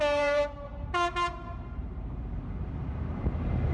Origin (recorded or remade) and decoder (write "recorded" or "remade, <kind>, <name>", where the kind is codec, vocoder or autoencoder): remade, vocoder, BigVGAN v2